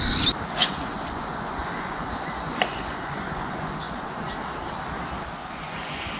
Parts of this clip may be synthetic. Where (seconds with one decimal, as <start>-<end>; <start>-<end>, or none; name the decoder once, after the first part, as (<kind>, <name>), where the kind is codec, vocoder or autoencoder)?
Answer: 0.6-4.3 (vocoder, Vocos); 5.4-6.2